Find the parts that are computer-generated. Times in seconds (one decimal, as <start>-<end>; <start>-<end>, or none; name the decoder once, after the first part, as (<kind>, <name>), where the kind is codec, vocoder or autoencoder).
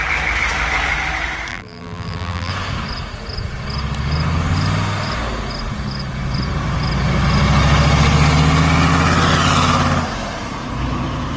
1.5-2.5 (vocoder, BigVGAN v2)